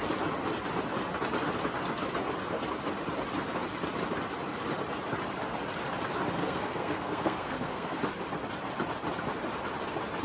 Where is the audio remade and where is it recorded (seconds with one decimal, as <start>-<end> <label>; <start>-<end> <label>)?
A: 0.0-6.4 recorded; 6.4-8.0 remade; 8.0-10.2 recorded